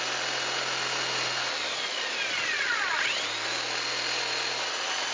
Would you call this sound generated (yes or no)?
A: no